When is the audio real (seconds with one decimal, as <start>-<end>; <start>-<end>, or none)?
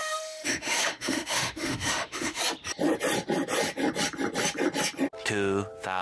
2.4-6.0